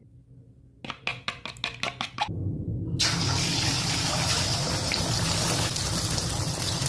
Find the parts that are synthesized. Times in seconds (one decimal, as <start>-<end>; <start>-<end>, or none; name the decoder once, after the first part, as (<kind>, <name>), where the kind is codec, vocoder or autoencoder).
none